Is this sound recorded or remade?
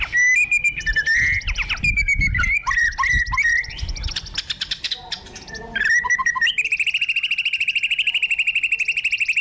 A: remade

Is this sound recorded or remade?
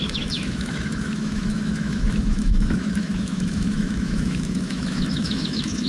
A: remade